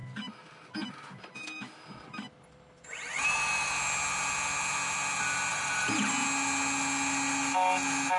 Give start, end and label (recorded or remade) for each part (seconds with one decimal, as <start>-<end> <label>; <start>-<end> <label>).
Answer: 0.0-5.5 recorded; 5.5-6.1 remade; 6.1-8.2 recorded